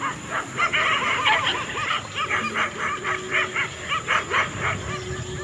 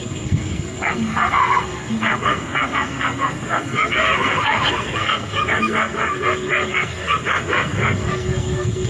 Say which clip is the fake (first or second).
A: second